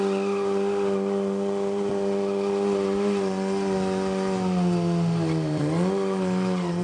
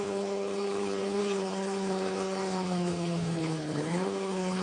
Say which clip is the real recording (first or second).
first